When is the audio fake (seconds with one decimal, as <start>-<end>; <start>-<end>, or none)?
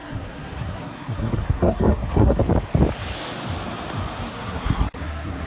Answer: 0.0-2.4; 4.3-5.5